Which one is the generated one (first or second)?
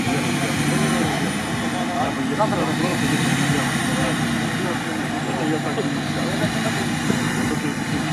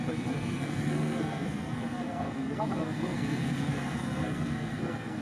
second